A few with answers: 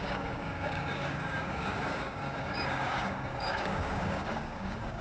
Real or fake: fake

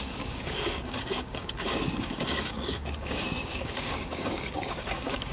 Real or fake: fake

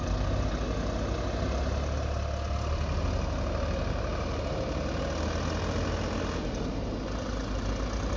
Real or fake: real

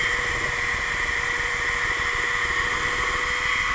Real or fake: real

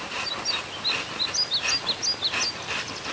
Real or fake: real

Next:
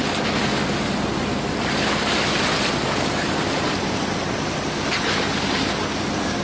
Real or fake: real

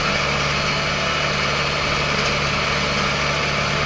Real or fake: real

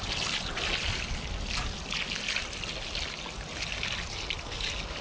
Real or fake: real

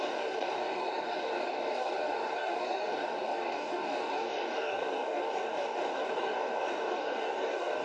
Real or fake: fake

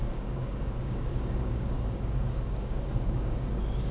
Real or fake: fake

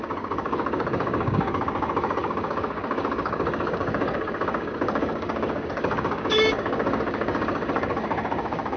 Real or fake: fake